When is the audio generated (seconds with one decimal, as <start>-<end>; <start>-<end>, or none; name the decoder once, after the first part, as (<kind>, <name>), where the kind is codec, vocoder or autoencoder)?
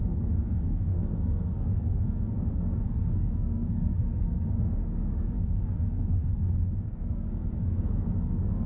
0.0-8.7 (codec, SNAC)